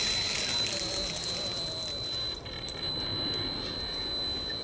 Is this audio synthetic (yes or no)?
no